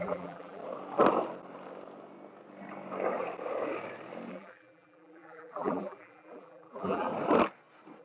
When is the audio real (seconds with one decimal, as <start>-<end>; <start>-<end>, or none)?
0.6-4.3; 7.1-8.0